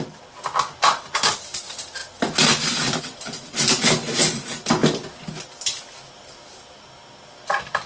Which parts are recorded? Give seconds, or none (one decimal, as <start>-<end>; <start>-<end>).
0.0-7.9